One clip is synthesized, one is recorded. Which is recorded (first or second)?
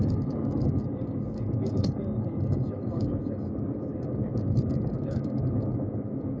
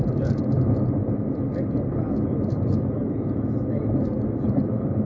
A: second